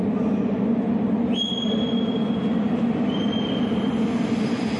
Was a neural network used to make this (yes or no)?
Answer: no